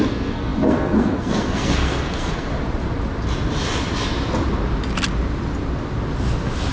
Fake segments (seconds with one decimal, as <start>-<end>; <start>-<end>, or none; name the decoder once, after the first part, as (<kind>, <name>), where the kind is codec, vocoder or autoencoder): 0.0-2.5 (codec, SNAC)

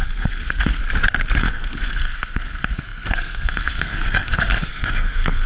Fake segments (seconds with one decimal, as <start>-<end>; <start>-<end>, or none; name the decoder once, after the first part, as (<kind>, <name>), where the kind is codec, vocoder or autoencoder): 0.0-0.8 (codec, SNAC); 1.4-5.5